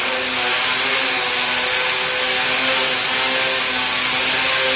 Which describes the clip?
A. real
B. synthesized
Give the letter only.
A